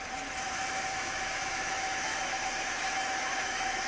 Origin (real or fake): fake